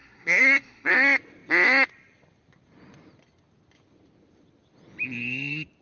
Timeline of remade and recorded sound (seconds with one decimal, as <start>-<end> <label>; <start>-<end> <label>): 0.0-0.9 remade; 0.9-5.8 recorded